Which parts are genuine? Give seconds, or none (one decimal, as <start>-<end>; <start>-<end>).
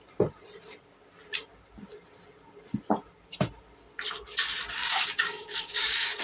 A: 0.0-4.8